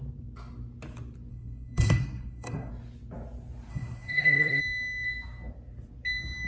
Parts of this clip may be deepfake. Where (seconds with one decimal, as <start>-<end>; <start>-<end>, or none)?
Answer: 1.3-2.7; 3.7-4.6